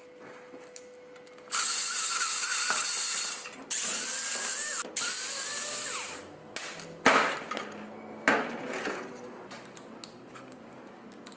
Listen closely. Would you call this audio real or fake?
real